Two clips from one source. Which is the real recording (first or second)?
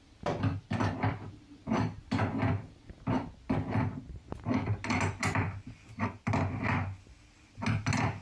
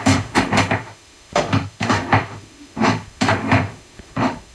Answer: first